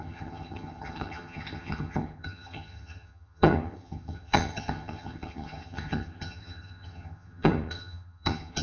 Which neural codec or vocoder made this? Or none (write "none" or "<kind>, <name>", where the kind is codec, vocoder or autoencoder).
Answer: vocoder, HiFi-GAN